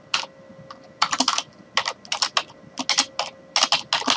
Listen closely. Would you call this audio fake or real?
real